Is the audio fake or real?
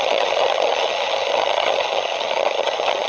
fake